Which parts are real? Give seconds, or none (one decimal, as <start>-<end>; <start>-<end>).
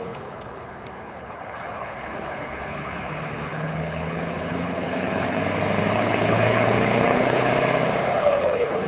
5.4-5.9; 7.5-8.2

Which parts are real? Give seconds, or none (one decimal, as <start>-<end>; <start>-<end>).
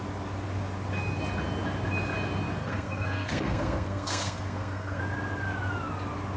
0.0-2.6; 5.0-6.4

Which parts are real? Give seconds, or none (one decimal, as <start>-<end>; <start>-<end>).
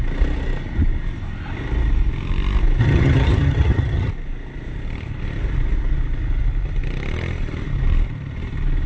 0.0-2.8; 4.1-8.9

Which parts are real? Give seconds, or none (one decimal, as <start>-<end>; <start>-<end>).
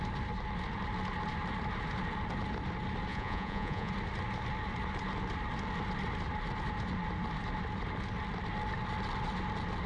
0.0-3.1; 3.9-9.9